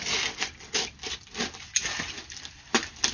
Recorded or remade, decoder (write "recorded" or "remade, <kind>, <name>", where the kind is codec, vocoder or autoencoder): recorded